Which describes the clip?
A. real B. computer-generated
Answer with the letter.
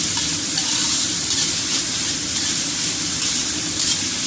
B